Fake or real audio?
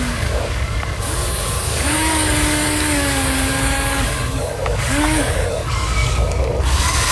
fake